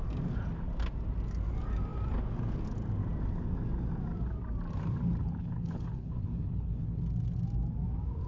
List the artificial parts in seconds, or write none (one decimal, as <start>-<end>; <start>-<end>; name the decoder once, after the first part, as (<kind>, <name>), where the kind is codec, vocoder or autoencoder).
5.2-7.0 (codec, HILCodec)